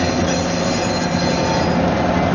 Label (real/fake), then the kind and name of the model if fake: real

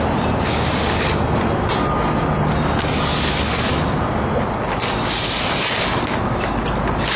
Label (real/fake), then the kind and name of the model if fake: real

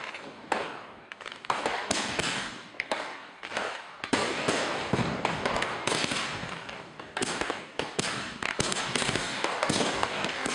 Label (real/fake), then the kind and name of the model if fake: fake, codec, DAC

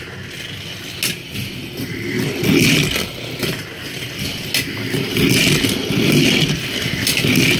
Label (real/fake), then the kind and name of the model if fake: real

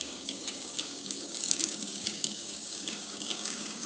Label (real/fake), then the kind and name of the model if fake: fake, codec, DAC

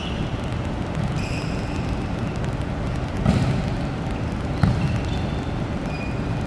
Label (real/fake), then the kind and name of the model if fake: real